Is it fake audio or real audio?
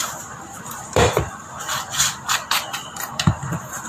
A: fake